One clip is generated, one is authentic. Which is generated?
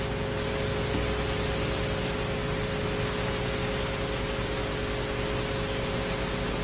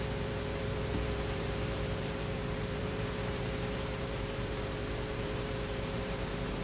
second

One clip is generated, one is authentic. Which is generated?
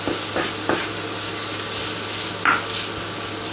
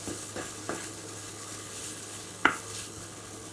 second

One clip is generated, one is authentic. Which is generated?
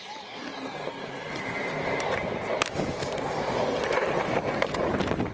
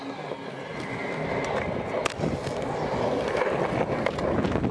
first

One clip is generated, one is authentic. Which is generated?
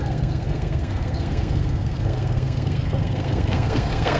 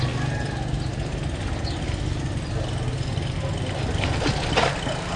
first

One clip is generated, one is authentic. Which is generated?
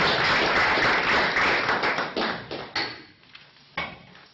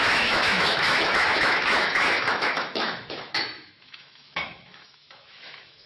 second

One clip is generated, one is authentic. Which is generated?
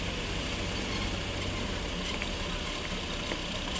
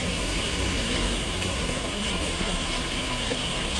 second